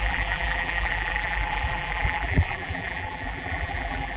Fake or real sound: fake